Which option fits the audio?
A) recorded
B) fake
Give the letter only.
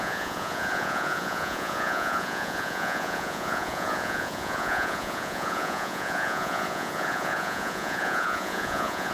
B